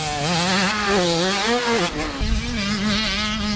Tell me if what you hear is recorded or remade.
recorded